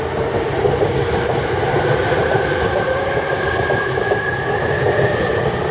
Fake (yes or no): no